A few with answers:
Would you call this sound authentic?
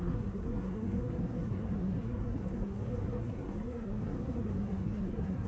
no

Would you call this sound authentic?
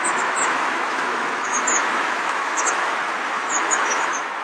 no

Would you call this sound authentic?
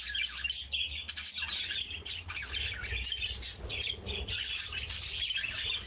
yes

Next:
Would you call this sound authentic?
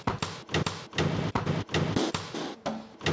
yes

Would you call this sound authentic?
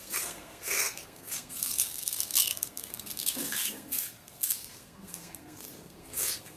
no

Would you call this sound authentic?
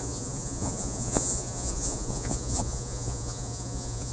no